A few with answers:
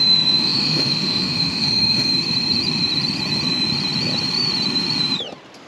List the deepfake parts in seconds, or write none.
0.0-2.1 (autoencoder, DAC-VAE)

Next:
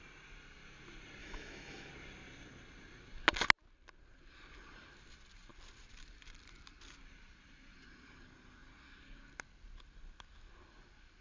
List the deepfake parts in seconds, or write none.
1.2-1.9 (autoencoder, DAC-VAE)

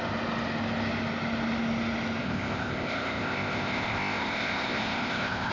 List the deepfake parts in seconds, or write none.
2.2-5.5 (codec, ZipCodec)

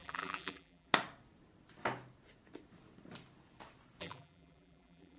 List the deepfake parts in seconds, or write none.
0.0-0.9 (vocoder, BigVGAN v2); 4.0-5.2

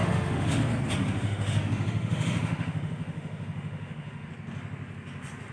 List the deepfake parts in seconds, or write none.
0.0-0.6 (autoencoder, DAC-VAE); 1.0-4.3